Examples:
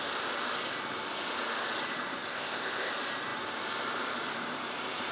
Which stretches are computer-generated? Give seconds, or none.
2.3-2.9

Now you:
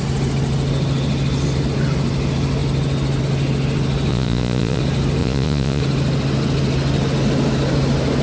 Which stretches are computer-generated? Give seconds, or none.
4.1-4.8; 5.2-5.8

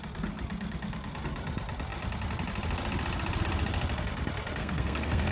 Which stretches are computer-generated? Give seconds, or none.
4.6-5.3

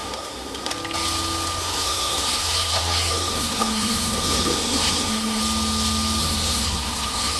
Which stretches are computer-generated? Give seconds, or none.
0.0-0.7; 1.6-5.4; 6.2-7.4